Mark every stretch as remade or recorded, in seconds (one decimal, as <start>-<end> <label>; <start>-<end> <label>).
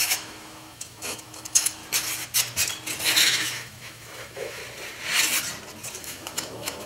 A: 0.0-1.8 remade; 1.8-3.2 recorded; 3.2-4.6 remade; 4.6-6.0 recorded; 6.0-6.9 remade